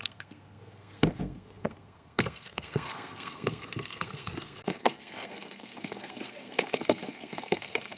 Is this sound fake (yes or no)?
yes